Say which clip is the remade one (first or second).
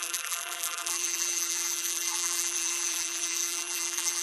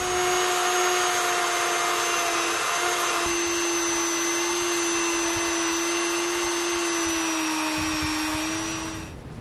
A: first